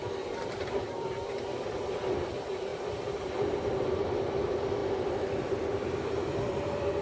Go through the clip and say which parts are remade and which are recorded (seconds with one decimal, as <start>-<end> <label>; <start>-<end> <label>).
0.0-0.5 recorded; 0.5-7.0 remade